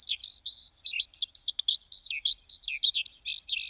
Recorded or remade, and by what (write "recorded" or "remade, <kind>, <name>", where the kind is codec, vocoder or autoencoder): recorded